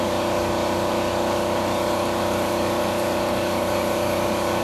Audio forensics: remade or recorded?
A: remade